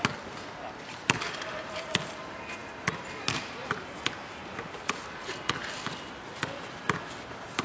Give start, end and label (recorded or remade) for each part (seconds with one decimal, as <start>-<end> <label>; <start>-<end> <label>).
0.0-7.6 recorded